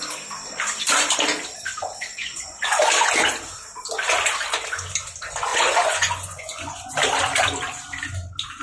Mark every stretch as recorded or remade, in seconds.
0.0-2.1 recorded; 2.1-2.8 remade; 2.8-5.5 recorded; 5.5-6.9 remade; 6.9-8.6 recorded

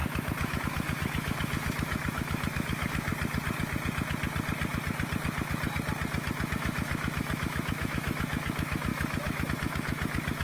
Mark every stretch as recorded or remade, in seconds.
0.0-3.1 remade; 3.1-6.5 recorded; 6.5-10.4 remade

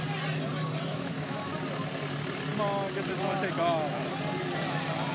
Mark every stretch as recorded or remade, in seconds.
0.0-0.9 recorded; 0.9-1.6 remade; 1.6-5.1 recorded

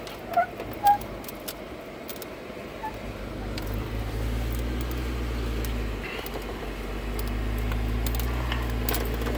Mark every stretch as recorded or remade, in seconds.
0.0-9.4 recorded

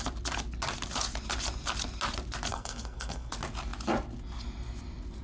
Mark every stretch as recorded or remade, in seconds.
0.0-2.5 recorded; 2.5-3.3 remade; 3.3-5.2 recorded

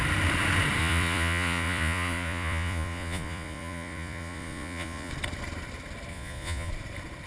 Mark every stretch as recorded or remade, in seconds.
0.0-0.8 recorded; 0.8-5.1 remade; 5.1-6.1 recorded; 6.1-6.7 remade; 6.7-7.3 recorded